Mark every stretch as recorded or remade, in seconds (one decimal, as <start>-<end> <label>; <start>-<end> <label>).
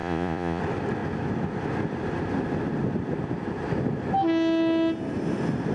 0.0-0.6 remade; 0.6-5.7 recorded